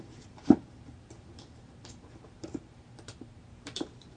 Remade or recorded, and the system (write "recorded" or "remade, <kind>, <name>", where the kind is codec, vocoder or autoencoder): remade, vocoder, BigVGAN v2